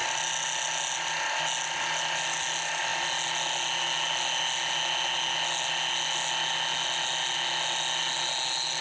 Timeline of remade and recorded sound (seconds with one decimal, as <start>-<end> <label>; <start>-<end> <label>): 0.0-8.8 recorded